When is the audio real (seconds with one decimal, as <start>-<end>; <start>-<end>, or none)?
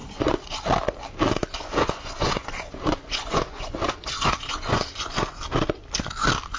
0.6-1.4; 5.4-6.6